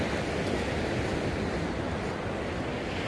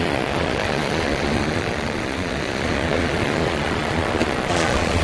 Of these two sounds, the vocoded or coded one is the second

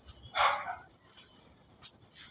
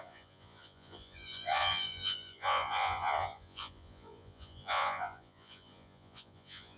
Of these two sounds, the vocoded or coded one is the second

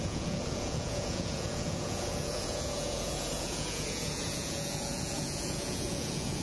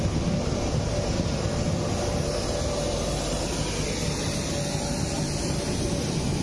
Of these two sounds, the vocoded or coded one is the first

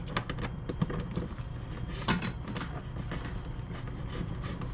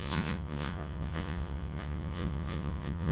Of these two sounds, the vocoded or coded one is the second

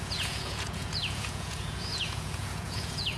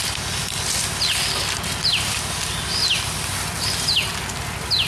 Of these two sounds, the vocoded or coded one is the first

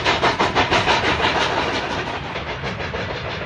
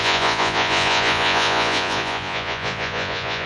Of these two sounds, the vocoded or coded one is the second